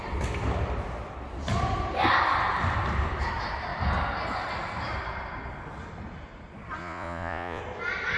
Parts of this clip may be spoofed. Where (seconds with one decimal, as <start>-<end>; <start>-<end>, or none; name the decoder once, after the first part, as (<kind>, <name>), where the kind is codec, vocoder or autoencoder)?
6.8-7.6 (vocoder, Vocos)